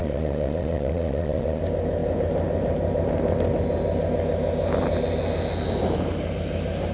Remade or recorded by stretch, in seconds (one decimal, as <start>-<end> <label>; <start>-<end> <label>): 0.0-1.6 remade; 1.6-6.9 recorded